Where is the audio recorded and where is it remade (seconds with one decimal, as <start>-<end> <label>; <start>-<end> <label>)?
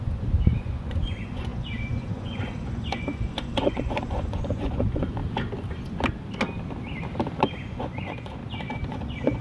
0.0-5.2 remade; 5.2-7.4 recorded; 7.4-8.4 remade; 8.4-8.9 recorded; 8.9-9.4 remade